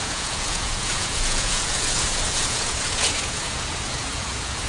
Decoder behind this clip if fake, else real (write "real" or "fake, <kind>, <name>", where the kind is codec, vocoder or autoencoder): fake, vocoder, Vocos